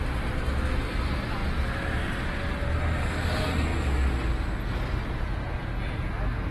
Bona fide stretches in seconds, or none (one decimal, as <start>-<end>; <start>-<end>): 0.0-5.2; 6.1-6.5